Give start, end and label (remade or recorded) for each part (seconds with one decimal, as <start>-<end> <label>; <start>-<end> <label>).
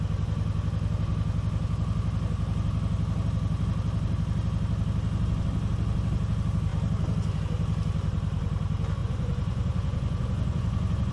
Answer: 0.0-9.0 recorded; 9.0-11.1 remade